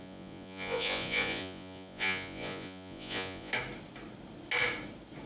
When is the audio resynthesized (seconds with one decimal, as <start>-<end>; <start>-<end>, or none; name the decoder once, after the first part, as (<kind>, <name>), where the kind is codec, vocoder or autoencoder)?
0.0-3.5 (vocoder, Vocos)